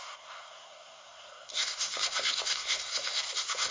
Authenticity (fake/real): fake